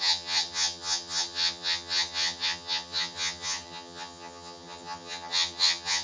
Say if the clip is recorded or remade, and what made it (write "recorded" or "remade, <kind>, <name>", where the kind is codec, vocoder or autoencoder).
remade, vocoder, HiFi-GAN